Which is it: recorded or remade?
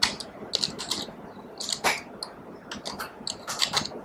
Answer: recorded